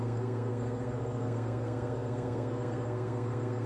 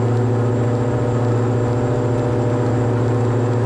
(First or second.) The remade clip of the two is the first